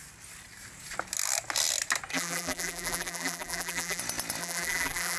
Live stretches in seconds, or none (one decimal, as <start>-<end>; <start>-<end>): 0.0-2.1; 4.0-4.4